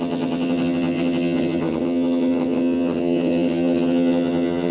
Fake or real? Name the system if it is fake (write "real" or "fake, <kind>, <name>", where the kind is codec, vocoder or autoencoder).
fake, vocoder, HiFi-GAN